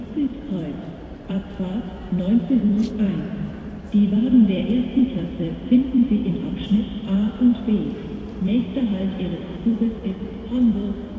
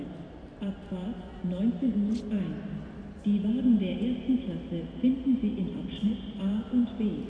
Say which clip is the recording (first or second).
second